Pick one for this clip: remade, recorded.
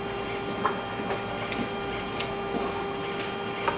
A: recorded